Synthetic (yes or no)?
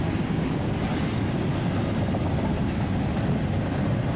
no